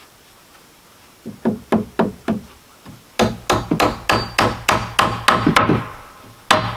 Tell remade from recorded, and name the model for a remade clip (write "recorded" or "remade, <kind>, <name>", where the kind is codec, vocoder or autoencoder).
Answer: recorded